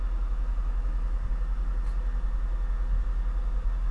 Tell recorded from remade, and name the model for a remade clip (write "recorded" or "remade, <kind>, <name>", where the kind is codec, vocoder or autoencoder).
recorded